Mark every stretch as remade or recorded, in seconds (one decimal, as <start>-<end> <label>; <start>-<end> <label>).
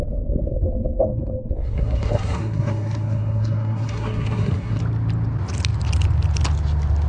0.0-0.5 recorded; 0.5-4.8 remade; 4.8-7.1 recorded